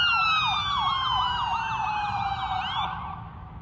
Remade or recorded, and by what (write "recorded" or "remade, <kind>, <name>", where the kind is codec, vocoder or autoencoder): recorded